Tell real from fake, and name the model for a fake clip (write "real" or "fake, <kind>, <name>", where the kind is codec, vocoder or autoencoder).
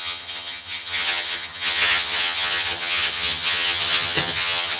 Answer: fake, vocoder, HiFi-GAN